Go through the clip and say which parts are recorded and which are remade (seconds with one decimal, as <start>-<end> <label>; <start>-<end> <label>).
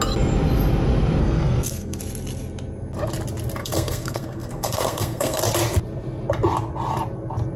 0.0-1.2 recorded; 1.2-2.0 remade; 2.0-3.6 recorded; 3.6-5.4 remade; 5.4-7.6 recorded